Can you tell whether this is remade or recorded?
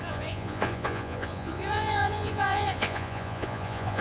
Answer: remade